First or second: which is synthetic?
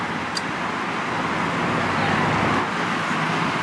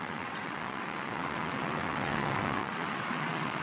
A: second